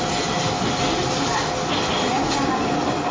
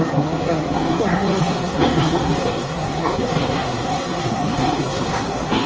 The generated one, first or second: second